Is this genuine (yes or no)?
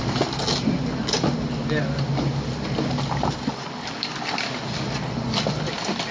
yes